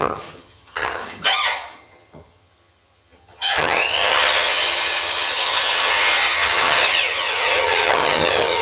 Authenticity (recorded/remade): remade